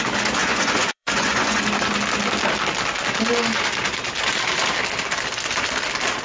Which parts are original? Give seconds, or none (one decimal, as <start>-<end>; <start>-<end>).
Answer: 0.0-0.4; 1.6-6.2